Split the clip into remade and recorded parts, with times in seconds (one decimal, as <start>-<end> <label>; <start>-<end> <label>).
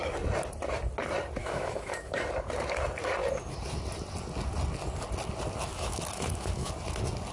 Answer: 0.0-1.4 recorded; 1.4-2.2 remade; 2.2-5.7 recorded; 5.7-6.7 remade; 6.7-7.3 recorded